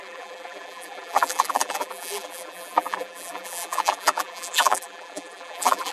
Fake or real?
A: fake